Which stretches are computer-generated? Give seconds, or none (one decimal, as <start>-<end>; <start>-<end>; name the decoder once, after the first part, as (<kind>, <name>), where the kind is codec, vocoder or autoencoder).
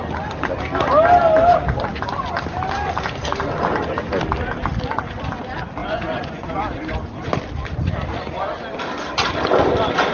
5.8-6.5 (vocoder, Vocos)